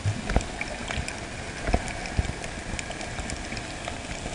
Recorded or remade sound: recorded